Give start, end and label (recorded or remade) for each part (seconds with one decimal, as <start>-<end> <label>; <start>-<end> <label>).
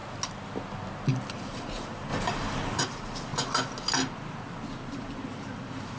0.0-1.3 recorded; 1.3-3.3 remade; 3.3-4.9 recorded; 4.9-6.0 remade